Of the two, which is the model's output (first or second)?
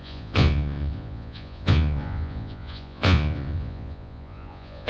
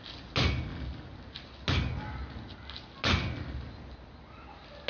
first